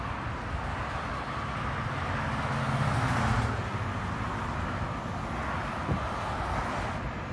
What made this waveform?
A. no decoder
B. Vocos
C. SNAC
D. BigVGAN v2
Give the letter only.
A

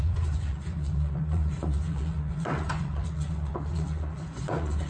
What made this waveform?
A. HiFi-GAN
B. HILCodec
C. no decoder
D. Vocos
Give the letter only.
D